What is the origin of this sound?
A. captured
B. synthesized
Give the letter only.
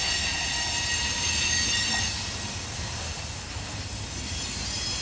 A